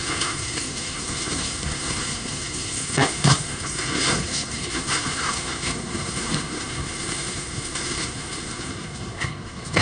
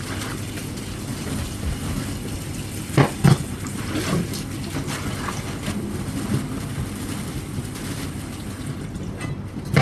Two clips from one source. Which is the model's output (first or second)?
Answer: first